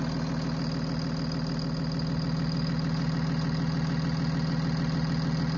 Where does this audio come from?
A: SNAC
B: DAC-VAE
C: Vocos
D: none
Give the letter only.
D